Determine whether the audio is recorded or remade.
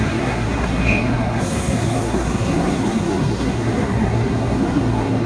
remade